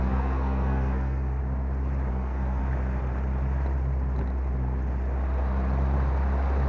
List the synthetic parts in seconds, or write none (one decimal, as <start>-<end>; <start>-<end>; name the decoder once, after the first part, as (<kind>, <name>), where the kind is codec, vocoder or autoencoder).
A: 0.0-1.4 (codec, SNAC); 2.1-2.6